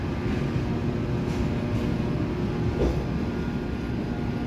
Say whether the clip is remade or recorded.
recorded